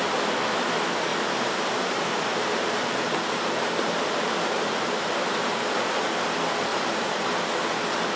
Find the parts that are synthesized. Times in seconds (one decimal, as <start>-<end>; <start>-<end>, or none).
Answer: 1.1-6.0; 6.7-7.2